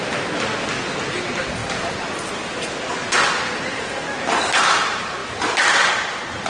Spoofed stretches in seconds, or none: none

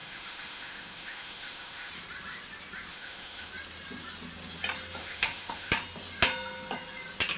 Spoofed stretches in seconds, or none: 0.0-1.9 (autoencoder, DAC-VAE); 2.9-3.5; 5.0-5.7